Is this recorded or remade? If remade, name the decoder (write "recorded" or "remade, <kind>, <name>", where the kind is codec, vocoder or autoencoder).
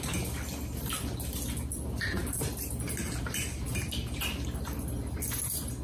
recorded